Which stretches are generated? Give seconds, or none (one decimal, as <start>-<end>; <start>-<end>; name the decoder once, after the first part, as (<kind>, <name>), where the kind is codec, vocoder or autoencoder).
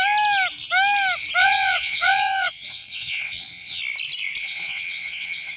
1.4-3.8 (vocoder, WaveNeXt); 4.4-5.6